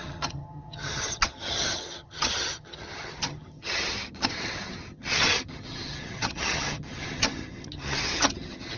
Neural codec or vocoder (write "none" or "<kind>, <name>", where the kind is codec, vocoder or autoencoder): vocoder, HiFi-GAN